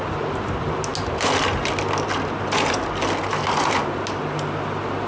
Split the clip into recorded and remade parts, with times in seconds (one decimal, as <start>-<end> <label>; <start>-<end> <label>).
0.0-5.1 recorded